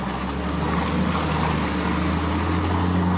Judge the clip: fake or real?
real